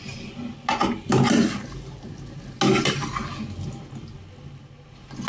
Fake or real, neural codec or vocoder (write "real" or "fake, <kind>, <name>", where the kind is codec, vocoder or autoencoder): real